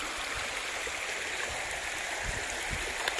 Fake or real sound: real